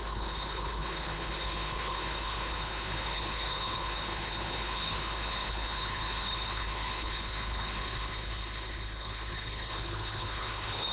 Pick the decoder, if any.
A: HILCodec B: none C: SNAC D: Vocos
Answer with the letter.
A